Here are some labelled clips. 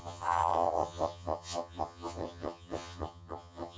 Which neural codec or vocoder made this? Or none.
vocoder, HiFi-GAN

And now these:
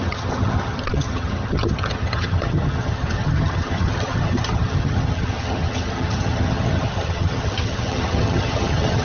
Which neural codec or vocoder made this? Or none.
vocoder, HiFi-GAN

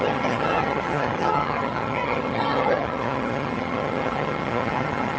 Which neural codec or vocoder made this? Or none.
vocoder, HiFi-GAN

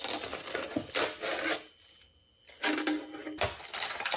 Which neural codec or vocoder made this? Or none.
none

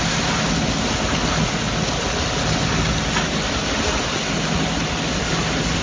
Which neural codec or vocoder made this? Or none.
none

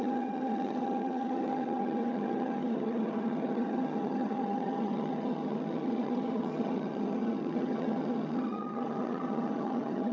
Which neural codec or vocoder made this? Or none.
vocoder, HiFi-GAN